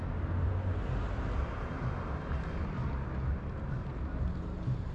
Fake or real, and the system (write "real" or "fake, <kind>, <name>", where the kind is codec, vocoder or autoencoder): real